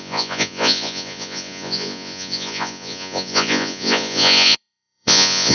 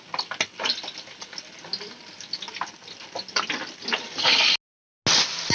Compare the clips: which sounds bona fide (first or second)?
second